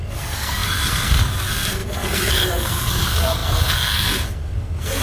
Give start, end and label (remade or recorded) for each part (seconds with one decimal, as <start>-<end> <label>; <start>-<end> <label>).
0.0-5.0 remade